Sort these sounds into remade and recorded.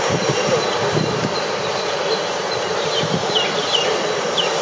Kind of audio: remade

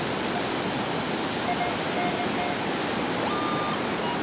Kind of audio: recorded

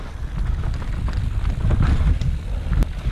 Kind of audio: recorded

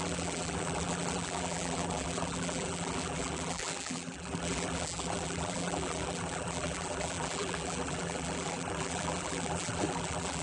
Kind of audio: remade